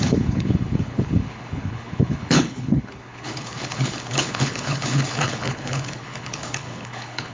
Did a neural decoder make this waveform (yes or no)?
yes